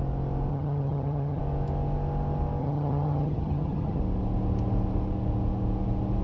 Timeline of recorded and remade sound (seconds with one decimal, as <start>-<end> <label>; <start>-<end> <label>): 0.0-0.5 recorded; 0.5-1.4 remade; 1.4-2.6 recorded; 2.6-4.0 remade; 4.0-6.2 recorded